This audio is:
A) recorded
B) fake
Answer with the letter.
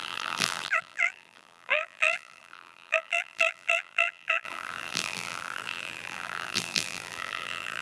B